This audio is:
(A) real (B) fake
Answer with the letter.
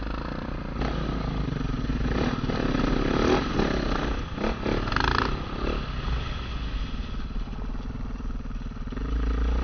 A